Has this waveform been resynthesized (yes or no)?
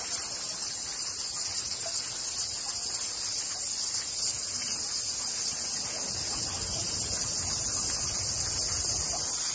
no